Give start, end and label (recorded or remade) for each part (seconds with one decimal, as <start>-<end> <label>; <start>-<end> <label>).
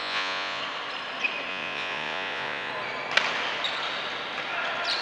0.0-0.6 remade; 0.6-1.5 recorded; 1.5-2.7 remade; 2.7-5.0 recorded